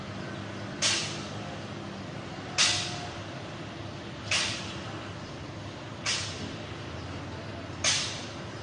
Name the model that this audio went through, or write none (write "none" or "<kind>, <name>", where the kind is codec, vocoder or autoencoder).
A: none